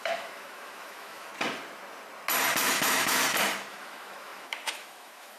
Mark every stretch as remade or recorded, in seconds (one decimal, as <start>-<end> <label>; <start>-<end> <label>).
0.0-1.3 remade; 1.3-2.7 recorded; 2.7-3.2 remade; 3.2-3.7 recorded; 3.7-5.4 remade